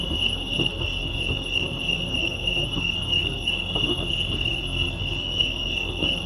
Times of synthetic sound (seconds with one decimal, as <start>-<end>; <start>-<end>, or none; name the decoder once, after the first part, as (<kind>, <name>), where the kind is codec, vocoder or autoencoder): 0.0-6.3 (codec, SNAC)